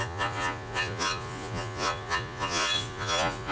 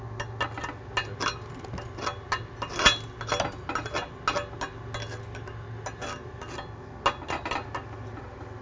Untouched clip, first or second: second